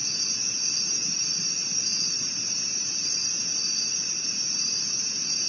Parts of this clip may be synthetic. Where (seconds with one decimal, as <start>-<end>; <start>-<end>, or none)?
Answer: 0.8-5.5